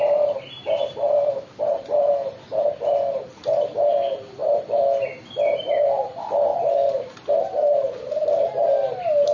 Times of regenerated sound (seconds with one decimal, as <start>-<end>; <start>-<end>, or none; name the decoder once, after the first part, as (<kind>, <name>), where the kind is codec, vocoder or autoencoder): none